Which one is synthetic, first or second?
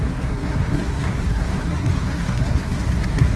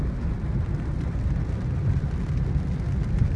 first